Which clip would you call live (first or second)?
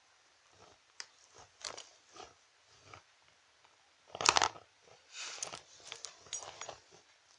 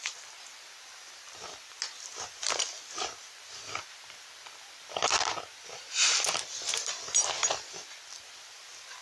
second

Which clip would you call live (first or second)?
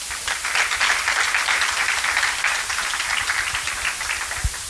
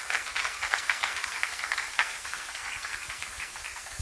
first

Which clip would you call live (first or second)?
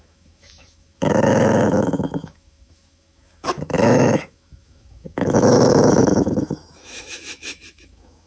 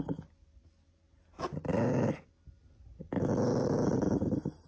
second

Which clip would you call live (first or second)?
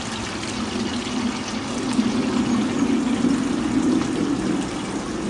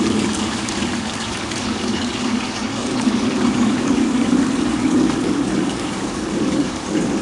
first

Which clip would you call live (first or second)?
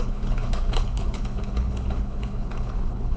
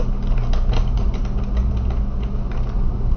second